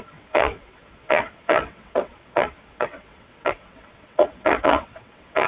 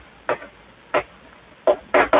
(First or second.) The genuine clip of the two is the second